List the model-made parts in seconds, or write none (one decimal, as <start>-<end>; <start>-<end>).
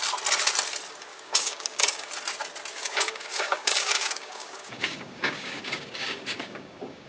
1.1-2.1; 2.7-7.1